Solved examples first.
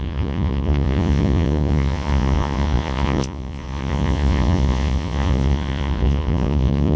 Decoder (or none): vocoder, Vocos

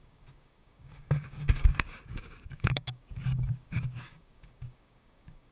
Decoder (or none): codec, DAC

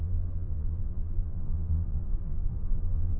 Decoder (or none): vocoder, Vocos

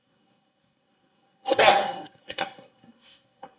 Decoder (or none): codec, SNAC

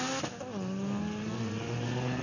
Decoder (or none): none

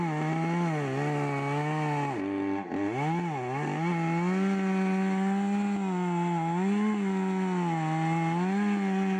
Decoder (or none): none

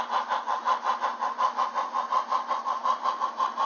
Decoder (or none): none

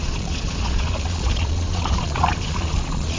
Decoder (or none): vocoder, Vocos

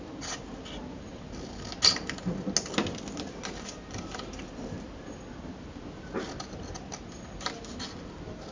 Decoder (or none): none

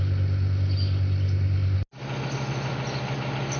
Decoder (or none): none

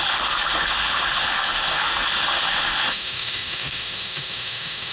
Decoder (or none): autoencoder, DAC-VAE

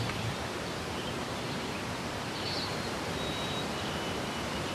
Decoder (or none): vocoder, BigVGAN v2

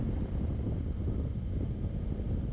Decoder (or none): none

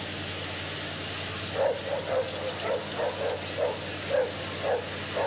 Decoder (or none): none